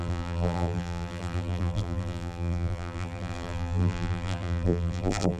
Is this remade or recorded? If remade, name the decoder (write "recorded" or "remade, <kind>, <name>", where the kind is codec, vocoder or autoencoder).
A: remade, vocoder, BigVGAN v2